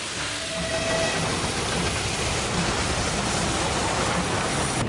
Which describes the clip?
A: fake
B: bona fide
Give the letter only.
B